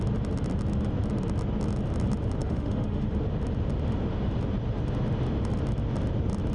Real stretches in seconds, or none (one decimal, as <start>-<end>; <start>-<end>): 0.0-2.4; 3.1-6.5